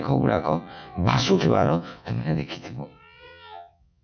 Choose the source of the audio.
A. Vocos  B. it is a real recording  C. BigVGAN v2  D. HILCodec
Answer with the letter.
A